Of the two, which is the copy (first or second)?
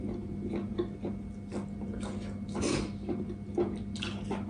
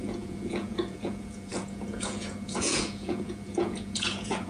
second